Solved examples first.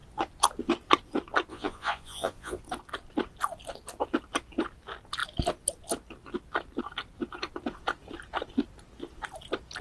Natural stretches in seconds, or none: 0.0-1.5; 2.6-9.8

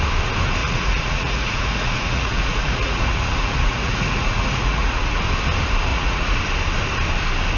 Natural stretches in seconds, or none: 0.0-0.6; 5.2-5.9; 6.4-7.6

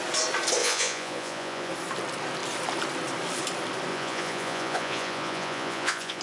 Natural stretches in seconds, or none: 0.0-0.6; 1.7-3.9

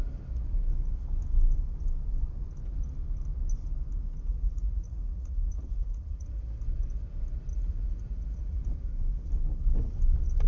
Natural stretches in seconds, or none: 0.0-4.3; 6.4-7.5; 8.6-10.5